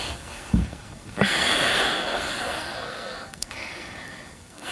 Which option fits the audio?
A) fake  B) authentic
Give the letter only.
A